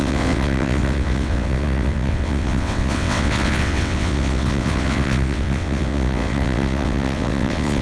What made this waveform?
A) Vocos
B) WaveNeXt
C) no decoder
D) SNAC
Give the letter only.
B